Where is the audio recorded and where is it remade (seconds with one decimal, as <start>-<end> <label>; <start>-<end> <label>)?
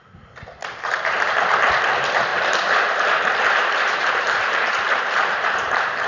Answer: 0.0-0.6 recorded; 0.6-1.9 remade; 1.9-2.3 recorded; 2.3-6.1 remade